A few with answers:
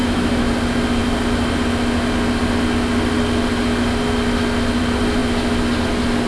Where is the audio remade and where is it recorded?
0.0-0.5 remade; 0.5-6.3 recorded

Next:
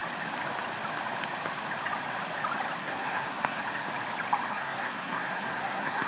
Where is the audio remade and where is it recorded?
0.0-2.8 recorded; 2.8-3.6 remade; 3.6-4.5 recorded; 4.5-6.1 remade